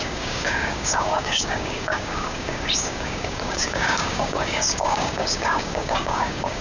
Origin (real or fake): fake